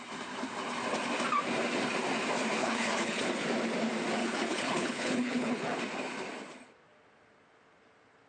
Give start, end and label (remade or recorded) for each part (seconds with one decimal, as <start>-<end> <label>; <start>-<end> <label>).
0.0-2.6 recorded; 2.6-3.2 remade; 3.2-4.2 recorded; 4.2-5.8 remade; 5.8-8.3 recorded